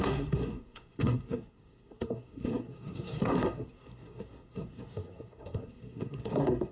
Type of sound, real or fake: fake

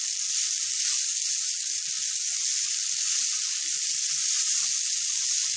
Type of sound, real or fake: real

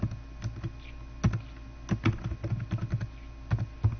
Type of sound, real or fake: real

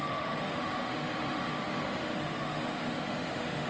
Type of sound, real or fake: fake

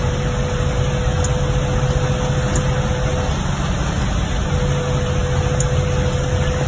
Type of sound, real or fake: real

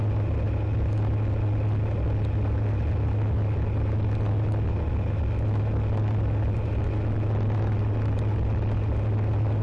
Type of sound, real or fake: real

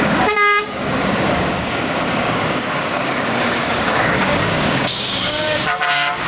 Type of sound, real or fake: fake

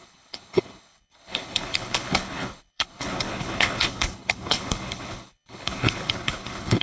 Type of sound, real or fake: fake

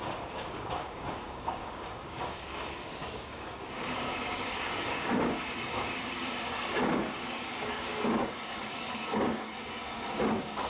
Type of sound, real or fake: fake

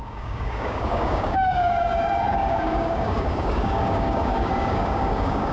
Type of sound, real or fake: fake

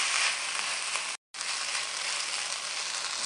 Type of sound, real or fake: real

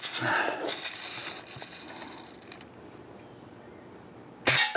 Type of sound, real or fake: real